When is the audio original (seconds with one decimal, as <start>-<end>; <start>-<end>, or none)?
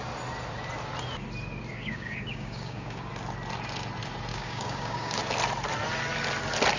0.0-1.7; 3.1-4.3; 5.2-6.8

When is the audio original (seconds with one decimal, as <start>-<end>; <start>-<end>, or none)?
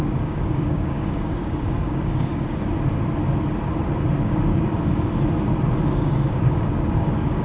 2.6-4.2; 4.7-5.8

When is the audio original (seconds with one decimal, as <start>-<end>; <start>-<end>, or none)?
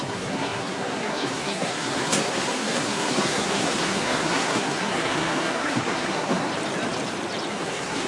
6.5-7.5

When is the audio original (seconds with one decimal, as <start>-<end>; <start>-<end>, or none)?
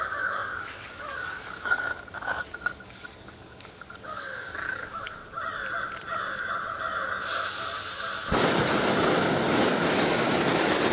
5.2-9.5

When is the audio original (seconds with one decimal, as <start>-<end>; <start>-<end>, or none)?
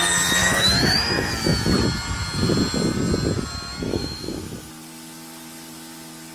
0.0-0.4; 1.3-3.9; 4.7-6.3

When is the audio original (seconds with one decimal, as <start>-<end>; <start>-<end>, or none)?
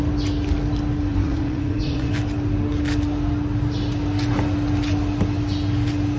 0.0-1.1; 2.1-6.2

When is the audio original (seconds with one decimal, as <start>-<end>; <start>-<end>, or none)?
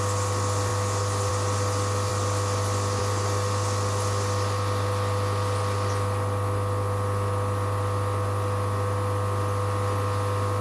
0.0-10.6